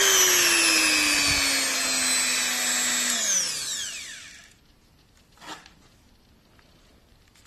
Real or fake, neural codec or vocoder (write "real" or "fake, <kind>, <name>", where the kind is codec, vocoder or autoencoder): real